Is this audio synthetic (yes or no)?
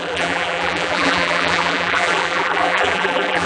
yes